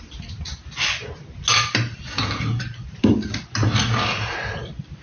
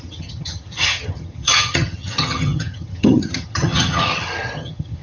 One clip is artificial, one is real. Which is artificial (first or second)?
second